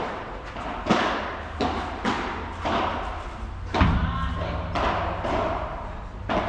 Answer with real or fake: real